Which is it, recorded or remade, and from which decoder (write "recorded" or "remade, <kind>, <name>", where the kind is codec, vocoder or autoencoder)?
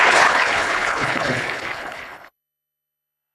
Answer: remade, codec, HILCodec